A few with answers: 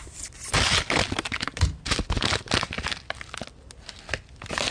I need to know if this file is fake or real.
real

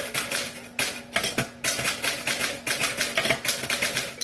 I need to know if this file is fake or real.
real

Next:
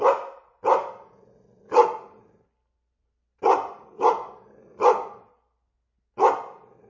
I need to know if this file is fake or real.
real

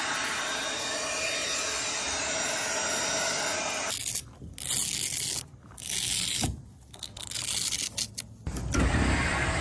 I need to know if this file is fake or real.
real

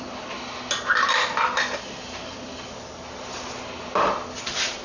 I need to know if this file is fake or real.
real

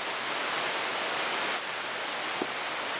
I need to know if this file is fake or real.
real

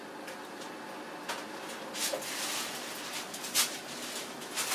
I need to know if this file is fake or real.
real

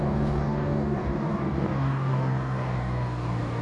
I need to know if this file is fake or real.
fake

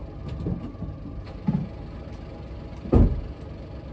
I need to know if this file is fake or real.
real